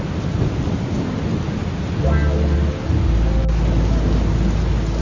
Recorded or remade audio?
recorded